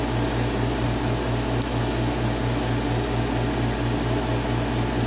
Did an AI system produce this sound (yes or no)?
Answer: no